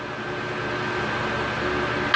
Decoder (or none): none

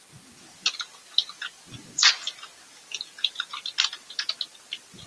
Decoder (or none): none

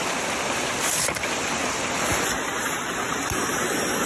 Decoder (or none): none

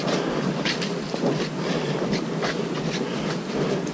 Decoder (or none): none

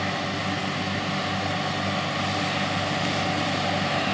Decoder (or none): none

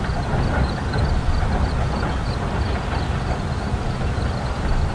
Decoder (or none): none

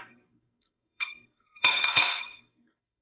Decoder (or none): codec, SNAC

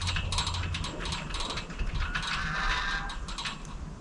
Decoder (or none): none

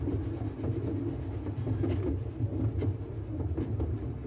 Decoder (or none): none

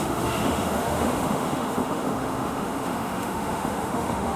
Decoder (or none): autoencoder, DAC-VAE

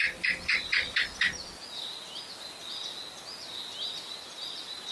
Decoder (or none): none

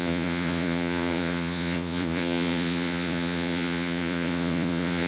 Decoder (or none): vocoder, Vocos